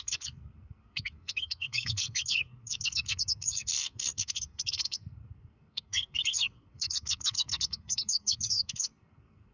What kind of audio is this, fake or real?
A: fake